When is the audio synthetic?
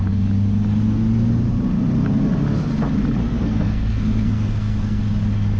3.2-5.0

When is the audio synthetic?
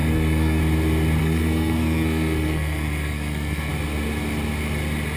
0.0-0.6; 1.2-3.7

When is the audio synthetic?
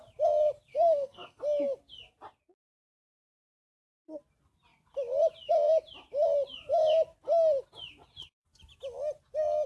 0.7-1.4